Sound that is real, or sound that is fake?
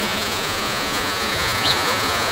fake